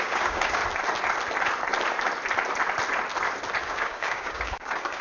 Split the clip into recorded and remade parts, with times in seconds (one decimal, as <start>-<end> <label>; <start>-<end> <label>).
0.0-0.6 remade; 0.6-3.6 recorded; 3.6-5.0 remade